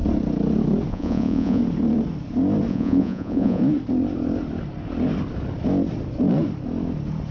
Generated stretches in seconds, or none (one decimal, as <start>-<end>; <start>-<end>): 0.9-1.6; 2.7-3.6